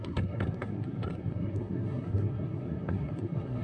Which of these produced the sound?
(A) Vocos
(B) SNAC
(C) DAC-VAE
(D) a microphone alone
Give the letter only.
B